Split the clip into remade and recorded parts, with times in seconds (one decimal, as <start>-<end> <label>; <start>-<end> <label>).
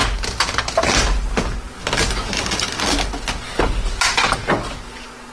0.0-5.3 recorded